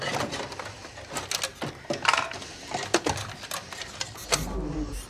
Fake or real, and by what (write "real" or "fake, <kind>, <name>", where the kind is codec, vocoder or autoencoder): real